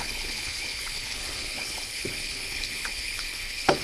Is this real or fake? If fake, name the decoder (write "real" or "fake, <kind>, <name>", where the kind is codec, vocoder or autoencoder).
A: fake, codec, HILCodec